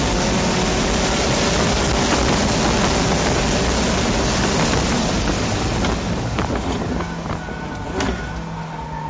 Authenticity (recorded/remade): recorded